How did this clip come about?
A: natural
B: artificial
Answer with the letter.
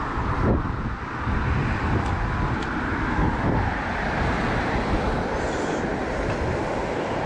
A